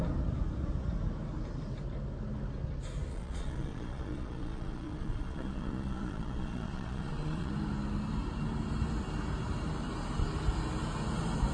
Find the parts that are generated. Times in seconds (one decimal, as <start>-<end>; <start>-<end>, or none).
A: 3.1-7.5